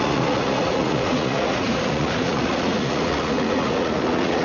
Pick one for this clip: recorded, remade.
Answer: remade